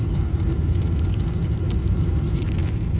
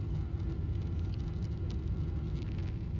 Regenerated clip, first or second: first